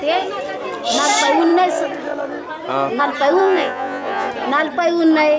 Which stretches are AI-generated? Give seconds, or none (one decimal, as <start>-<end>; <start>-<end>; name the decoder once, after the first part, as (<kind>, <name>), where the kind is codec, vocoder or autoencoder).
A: 3.4-4.3 (vocoder, Vocos)